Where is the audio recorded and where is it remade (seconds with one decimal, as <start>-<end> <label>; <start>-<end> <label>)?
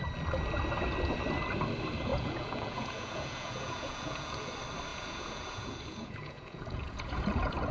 0.0-2.1 recorded; 2.1-4.5 remade; 4.5-4.9 recorded; 4.9-7.7 remade